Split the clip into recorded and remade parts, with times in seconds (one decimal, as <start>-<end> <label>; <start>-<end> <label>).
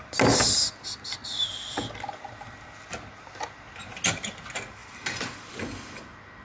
0.0-6.4 recorded